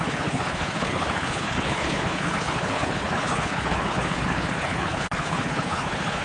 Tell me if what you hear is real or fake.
fake